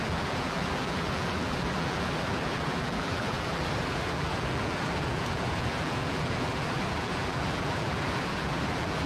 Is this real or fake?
fake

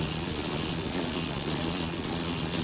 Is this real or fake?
fake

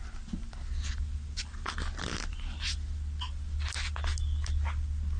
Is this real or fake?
real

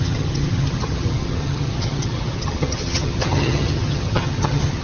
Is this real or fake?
fake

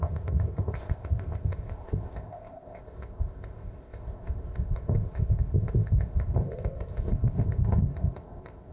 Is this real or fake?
fake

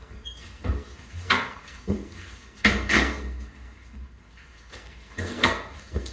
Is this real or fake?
fake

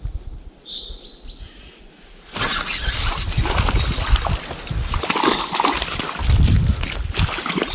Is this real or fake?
real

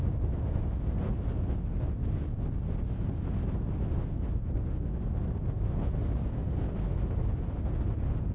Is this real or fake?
real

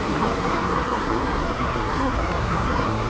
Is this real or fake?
fake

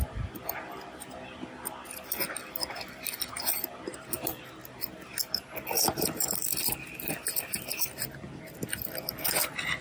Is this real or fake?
real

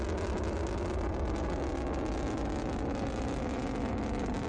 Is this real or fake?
real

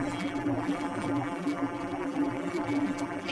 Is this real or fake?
fake